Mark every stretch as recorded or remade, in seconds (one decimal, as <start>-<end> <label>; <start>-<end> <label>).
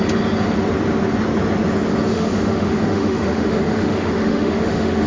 0.0-2.1 recorded; 2.1-5.1 remade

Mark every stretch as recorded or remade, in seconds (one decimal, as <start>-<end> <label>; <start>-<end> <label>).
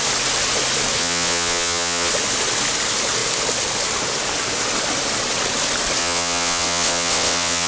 0.0-1.0 recorded; 1.0-2.1 remade; 2.1-6.0 recorded; 6.0-7.7 remade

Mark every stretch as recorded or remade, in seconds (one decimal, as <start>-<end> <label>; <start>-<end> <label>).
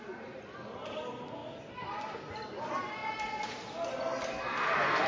0.0-1.4 recorded; 1.4-2.3 remade; 2.3-5.1 recorded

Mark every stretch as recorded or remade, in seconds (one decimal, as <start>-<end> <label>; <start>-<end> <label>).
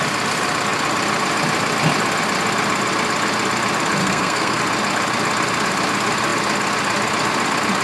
0.0-4.0 recorded; 4.0-4.6 remade; 4.6-7.8 recorded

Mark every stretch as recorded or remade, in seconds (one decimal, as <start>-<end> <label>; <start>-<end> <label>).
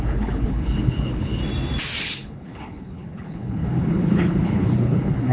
0.0-1.4 remade; 1.4-2.0 recorded; 2.0-5.3 remade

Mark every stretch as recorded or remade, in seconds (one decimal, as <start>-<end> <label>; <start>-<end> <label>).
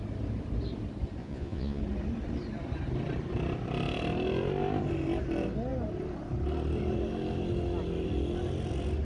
0.0-1.2 recorded; 1.2-1.8 remade; 1.8-9.0 recorded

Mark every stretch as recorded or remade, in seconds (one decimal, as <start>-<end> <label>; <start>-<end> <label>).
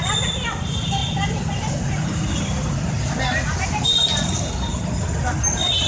0.0-5.9 recorded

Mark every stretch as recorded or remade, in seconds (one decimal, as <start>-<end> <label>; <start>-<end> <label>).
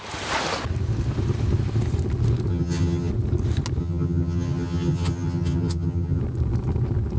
0.0-2.5 recorded; 2.5-3.1 remade; 3.1-3.8 recorded; 3.8-6.2 remade; 6.2-7.2 recorded